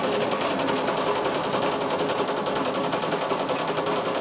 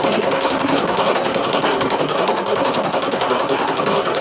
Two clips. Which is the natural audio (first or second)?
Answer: first